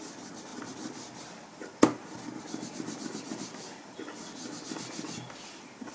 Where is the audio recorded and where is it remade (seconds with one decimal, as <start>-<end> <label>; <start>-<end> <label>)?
0.0-5.9 recorded